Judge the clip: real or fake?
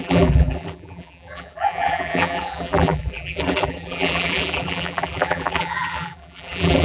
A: fake